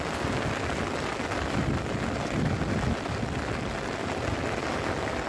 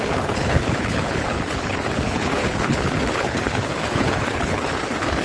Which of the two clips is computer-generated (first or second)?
second